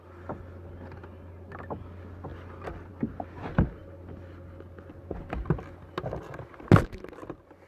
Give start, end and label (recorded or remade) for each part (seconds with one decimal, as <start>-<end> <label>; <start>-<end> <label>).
0.0-7.7 recorded

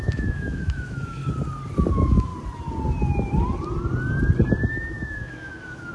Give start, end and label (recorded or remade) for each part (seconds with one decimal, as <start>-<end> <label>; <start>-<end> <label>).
0.0-1.2 remade; 1.2-1.9 recorded; 1.9-2.3 remade; 2.3-4.7 recorded; 4.7-5.9 remade